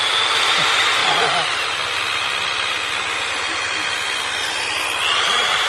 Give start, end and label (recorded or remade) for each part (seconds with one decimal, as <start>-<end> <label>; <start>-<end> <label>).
0.0-1.0 remade; 1.0-4.4 recorded; 4.4-5.7 remade